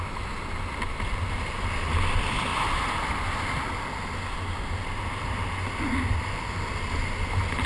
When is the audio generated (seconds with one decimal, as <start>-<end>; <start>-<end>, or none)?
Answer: none